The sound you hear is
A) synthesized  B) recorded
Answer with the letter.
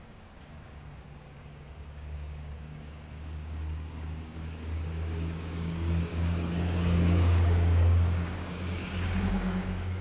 A